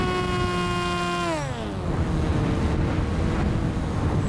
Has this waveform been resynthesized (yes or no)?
no